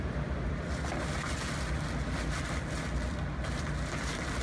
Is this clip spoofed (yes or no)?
no